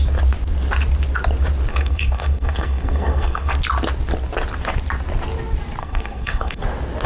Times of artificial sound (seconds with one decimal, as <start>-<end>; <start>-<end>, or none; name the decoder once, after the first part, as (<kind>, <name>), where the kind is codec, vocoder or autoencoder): 1.7-3.5 (codec, SNAC); 5.8-6.6